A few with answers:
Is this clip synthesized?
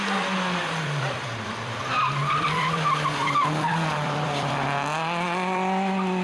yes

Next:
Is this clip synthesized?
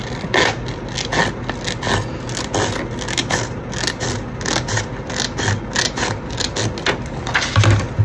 no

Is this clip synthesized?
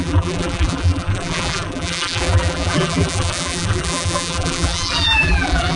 yes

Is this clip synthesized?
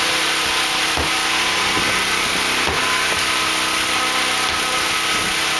no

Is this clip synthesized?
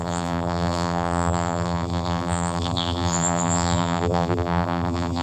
yes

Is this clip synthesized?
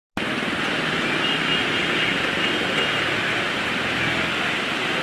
no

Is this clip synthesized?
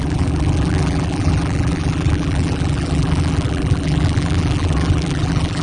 yes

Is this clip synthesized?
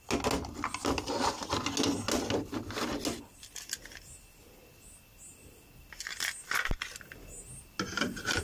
no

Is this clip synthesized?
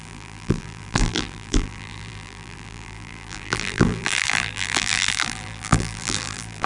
yes